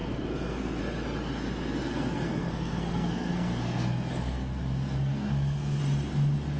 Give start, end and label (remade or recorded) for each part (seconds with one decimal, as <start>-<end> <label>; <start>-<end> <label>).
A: 0.0-0.8 remade; 0.8-1.8 recorded; 1.8-5.8 remade; 5.8-6.6 recorded

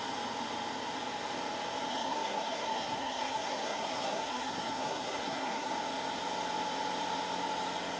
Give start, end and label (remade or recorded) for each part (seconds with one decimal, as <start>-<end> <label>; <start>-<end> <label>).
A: 0.0-1.9 recorded; 1.9-5.7 remade; 5.7-8.0 recorded

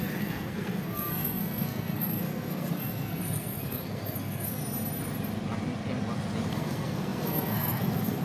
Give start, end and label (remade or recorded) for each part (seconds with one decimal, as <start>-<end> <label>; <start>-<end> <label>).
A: 0.0-4.6 remade; 4.6-6.5 recorded; 6.5-8.2 remade

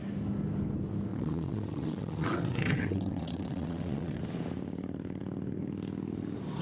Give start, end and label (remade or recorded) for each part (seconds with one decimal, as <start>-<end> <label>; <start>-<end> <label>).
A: 0.0-1.1 recorded; 1.1-4.2 remade; 4.2-6.6 recorded